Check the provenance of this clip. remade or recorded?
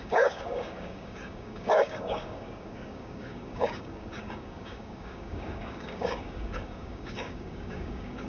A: remade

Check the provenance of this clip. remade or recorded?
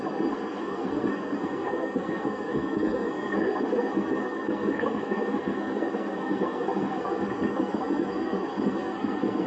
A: remade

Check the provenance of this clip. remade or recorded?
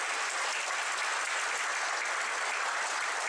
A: recorded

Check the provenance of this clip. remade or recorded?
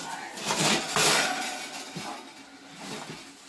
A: recorded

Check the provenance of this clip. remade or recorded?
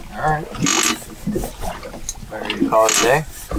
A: recorded